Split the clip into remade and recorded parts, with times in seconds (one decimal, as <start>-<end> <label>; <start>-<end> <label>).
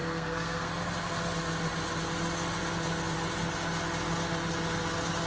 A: 0.0-0.7 remade; 0.7-5.3 recorded